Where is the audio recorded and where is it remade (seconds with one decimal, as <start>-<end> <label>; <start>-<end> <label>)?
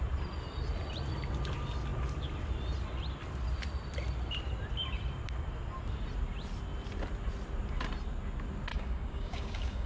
0.0-8.7 recorded; 8.7-9.9 remade